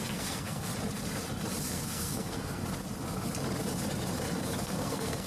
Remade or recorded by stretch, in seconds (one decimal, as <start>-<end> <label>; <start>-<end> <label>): 0.0-0.7 remade; 0.7-1.7 recorded; 1.7-2.6 remade; 2.6-4.6 recorded; 4.6-5.3 remade